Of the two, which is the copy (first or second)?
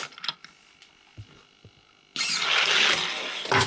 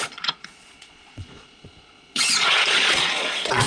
second